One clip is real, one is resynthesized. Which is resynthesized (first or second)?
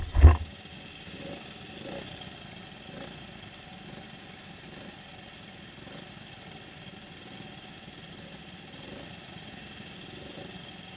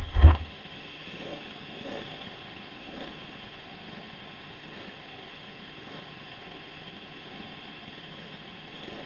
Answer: second